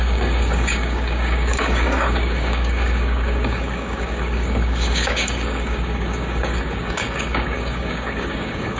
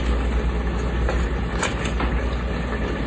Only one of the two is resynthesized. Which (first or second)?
first